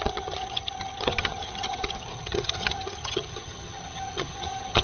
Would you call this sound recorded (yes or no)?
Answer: no